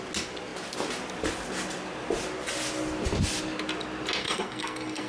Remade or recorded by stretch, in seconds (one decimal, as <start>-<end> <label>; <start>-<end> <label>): 0.0-4.2 recorded; 4.2-5.1 remade